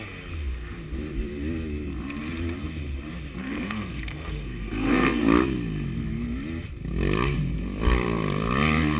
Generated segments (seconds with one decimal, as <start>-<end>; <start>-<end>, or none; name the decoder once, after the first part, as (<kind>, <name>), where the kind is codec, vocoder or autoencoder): 3.4-5.2 (codec, SNAC)